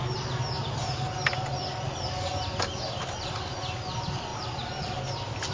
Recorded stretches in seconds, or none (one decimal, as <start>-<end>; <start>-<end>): 0.0-5.5